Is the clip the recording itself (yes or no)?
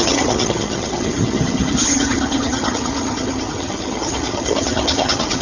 no